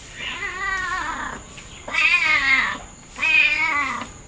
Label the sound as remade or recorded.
recorded